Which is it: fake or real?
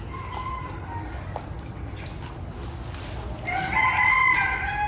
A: real